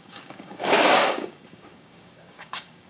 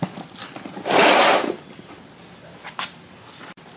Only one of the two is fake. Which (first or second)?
first